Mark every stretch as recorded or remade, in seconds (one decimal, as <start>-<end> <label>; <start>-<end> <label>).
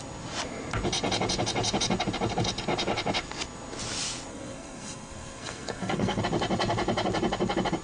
0.0-4.3 recorded; 4.3-6.2 remade; 6.2-7.8 recorded